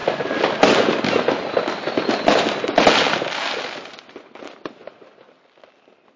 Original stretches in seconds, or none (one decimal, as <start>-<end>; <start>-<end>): 0.0-6.2